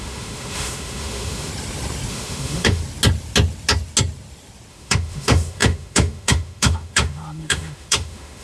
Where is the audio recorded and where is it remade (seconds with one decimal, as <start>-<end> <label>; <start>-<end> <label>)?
0.0-1.5 remade; 1.5-2.1 recorded; 2.1-2.8 remade; 2.8-4.7 recorded; 4.7-8.4 remade